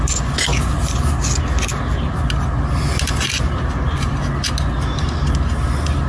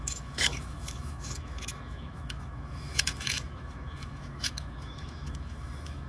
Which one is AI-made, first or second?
second